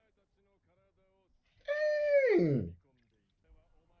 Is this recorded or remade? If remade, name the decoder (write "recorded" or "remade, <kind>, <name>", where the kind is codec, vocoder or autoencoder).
recorded